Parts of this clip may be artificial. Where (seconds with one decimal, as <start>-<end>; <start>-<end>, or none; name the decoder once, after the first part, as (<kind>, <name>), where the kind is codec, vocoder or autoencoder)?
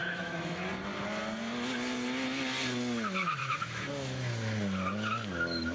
0.0-0.7 (autoencoder, DAC-VAE); 3.4-3.9